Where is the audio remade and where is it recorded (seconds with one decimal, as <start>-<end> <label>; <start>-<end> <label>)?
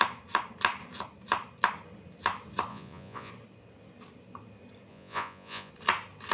0.0-2.7 recorded; 2.7-3.3 remade; 3.3-4.9 recorded; 4.9-5.7 remade; 5.7-6.3 recorded